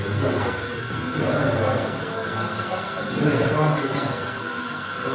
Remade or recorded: remade